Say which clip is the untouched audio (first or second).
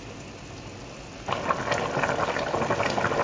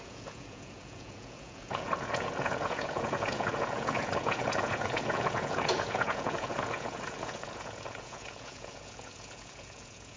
first